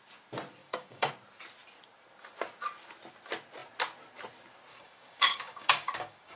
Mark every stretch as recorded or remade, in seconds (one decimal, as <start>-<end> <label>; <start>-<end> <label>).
0.0-0.6 recorded; 0.6-1.1 remade; 1.1-4.7 recorded; 4.7-6.4 remade